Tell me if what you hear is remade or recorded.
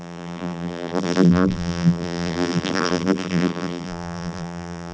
remade